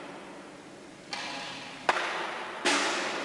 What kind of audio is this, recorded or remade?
recorded